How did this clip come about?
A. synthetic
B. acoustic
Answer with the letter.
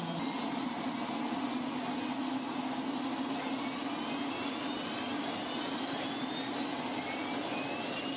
B